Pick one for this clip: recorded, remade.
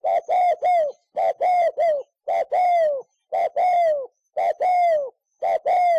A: recorded